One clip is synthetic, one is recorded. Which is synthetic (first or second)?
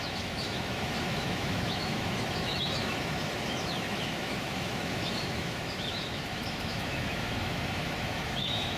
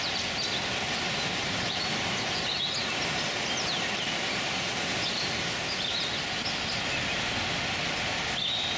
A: first